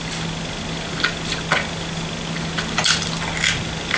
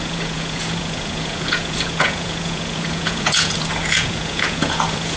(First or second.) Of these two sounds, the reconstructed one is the second